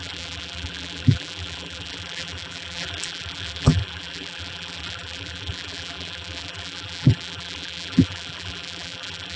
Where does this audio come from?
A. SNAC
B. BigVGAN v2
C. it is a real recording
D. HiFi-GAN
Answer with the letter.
B